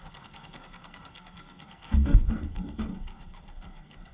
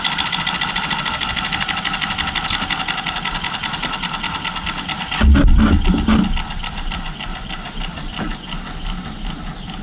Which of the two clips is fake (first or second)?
first